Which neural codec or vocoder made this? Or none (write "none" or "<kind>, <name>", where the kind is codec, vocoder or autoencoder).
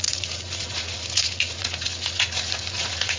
vocoder, Vocos